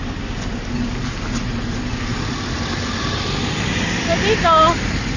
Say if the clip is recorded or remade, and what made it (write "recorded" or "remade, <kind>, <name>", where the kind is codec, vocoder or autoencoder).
recorded